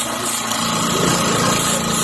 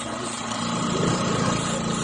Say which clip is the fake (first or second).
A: second